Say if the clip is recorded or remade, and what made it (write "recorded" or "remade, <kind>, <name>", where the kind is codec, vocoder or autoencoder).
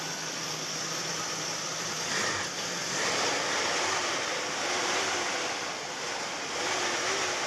recorded